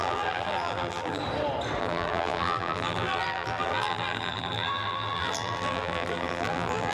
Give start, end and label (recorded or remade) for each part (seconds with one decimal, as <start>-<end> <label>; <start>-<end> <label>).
0.0-1.2 remade; 1.2-1.8 recorded; 1.8-6.9 remade